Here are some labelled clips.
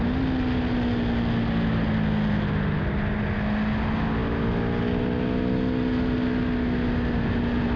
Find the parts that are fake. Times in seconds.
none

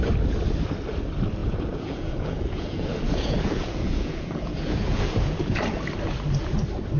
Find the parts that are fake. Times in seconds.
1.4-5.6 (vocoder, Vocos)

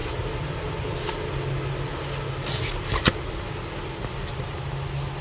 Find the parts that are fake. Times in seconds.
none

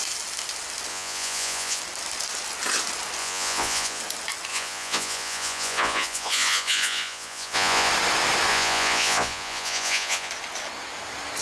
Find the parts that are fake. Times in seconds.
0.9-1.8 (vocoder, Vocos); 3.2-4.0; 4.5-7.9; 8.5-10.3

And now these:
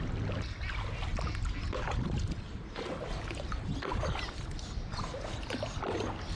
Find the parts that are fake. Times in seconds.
none

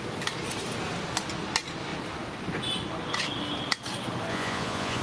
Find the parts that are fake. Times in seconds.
4.3-5.0 (vocoder, Vocos)

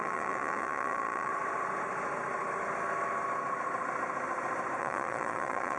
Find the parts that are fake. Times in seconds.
0.0-1.3 (vocoder, Vocos); 4.8-5.8